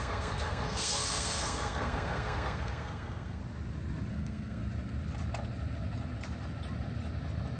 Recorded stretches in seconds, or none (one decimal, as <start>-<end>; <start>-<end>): 3.4-4.1; 4.6-7.6